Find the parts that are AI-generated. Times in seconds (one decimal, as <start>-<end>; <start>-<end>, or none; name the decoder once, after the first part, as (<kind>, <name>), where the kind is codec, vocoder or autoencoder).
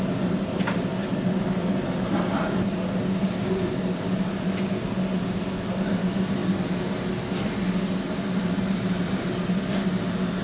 none